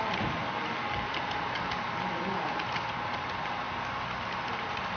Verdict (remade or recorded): recorded